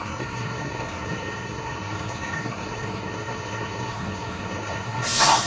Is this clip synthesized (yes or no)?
yes